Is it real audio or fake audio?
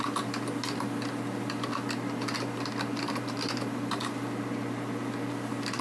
real